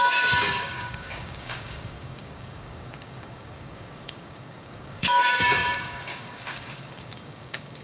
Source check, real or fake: fake